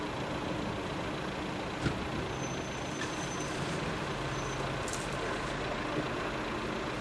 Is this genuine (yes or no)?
yes